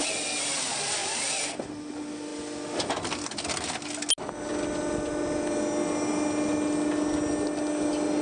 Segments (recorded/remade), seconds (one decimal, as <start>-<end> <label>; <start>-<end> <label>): 0.0-8.2 recorded